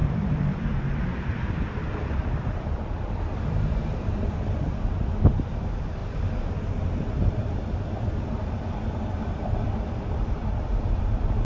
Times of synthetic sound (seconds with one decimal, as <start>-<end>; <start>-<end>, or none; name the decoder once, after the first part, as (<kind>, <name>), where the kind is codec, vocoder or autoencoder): 0.0-11.4 (vocoder, BigVGAN v2)